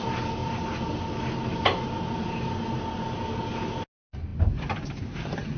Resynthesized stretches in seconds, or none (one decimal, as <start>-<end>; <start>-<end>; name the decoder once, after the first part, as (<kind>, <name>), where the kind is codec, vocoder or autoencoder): none